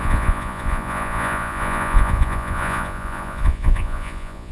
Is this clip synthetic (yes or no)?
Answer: yes